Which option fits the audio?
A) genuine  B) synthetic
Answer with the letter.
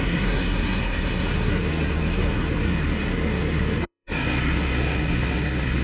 B